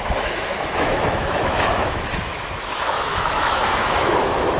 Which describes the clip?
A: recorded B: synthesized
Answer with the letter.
B